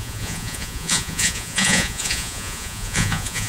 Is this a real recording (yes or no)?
no